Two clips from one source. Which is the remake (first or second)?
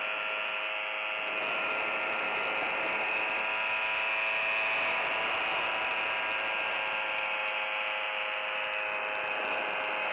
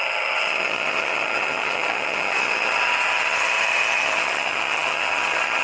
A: second